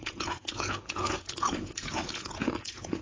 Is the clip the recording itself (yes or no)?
no